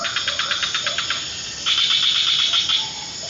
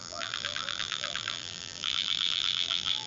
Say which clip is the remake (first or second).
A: second